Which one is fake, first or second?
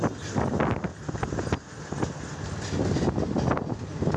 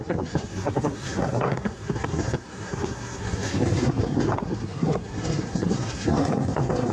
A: second